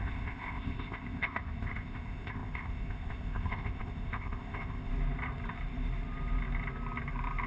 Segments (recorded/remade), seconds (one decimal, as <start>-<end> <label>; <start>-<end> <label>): 0.0-4.9 remade; 4.9-7.5 recorded